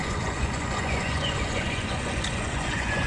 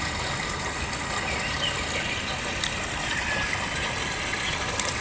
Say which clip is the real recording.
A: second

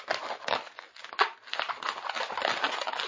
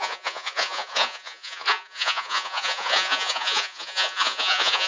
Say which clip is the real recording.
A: first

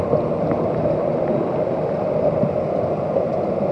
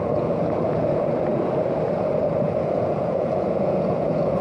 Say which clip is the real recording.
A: first